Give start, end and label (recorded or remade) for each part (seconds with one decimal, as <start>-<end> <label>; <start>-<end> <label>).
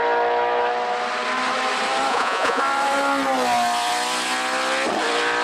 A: 0.0-2.1 recorded; 2.1-2.6 remade; 2.6-5.4 recorded